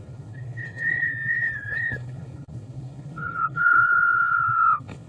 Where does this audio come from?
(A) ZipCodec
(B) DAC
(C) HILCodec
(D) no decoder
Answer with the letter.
C